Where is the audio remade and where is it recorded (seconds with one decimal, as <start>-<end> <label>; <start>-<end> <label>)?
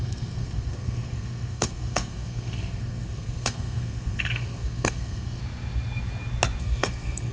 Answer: 0.0-5.4 remade; 5.4-6.6 recorded; 6.6-7.3 remade